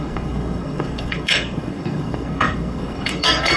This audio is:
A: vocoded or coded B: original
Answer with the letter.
A